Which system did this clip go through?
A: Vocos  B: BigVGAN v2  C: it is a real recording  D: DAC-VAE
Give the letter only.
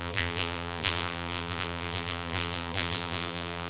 B